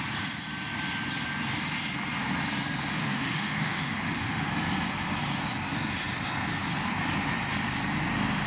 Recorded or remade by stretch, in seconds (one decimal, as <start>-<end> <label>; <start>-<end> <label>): 0.0-3.0 recorded; 3.0-4.5 remade; 4.5-8.5 recorded